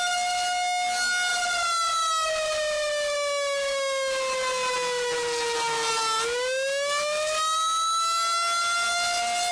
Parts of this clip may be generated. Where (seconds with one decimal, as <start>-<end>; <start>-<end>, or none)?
none